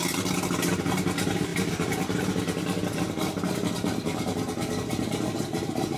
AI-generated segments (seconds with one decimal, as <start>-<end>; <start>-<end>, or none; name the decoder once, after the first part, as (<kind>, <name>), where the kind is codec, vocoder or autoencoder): none